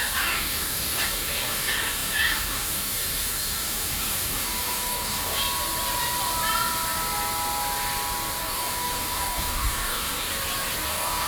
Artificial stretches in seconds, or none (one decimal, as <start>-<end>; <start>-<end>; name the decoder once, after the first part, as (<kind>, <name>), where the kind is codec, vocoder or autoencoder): 0.0-5.4 (codec, DAC); 8.4-10.3; 10.9-11.3